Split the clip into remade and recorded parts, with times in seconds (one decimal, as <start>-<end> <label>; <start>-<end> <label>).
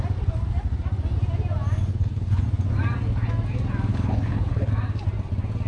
0.0-1.9 recorded; 1.9-2.4 remade; 2.4-3.9 recorded; 3.9-4.7 remade; 4.7-5.7 recorded